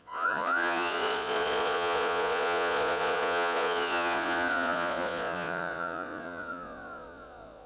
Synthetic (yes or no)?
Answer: yes